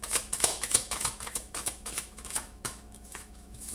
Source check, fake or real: fake